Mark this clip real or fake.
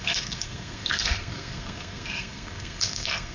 fake